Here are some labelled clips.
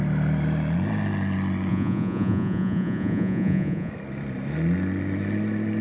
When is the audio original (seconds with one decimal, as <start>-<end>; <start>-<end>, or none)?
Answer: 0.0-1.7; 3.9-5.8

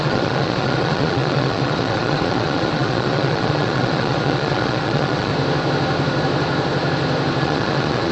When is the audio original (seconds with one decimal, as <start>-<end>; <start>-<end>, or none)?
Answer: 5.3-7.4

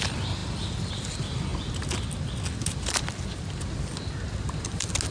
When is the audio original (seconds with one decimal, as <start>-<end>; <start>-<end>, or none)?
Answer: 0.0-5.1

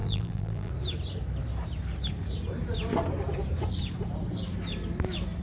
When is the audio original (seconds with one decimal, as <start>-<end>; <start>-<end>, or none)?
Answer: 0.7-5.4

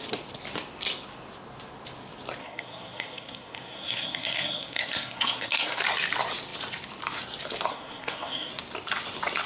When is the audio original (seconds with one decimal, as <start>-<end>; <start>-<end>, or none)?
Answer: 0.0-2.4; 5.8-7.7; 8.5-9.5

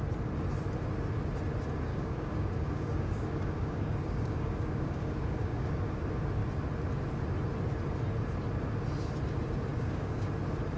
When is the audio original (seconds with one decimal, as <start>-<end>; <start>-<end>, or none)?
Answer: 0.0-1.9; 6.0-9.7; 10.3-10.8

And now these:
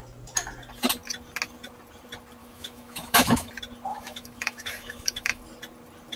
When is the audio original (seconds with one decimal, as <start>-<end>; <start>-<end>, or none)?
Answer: 0.0-2.4; 3.5-3.9; 5.4-6.2

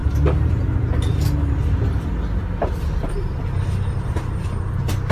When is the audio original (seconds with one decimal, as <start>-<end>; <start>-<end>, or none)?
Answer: 0.0-5.1